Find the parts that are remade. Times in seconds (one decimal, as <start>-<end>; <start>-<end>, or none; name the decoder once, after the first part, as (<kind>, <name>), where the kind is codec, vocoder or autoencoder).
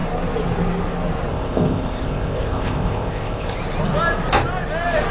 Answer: 1.3-3.6 (codec, ZipCodec)